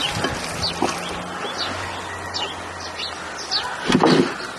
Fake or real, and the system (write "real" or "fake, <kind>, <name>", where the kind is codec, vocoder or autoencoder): real